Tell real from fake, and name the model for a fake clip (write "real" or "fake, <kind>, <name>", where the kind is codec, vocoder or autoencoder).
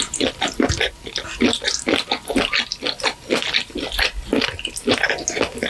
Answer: real